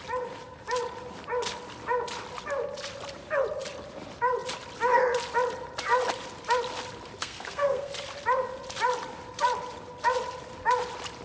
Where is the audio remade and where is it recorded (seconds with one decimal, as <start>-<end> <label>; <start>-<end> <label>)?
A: 0.0-7.2 recorded; 7.2-7.9 remade; 7.9-11.2 recorded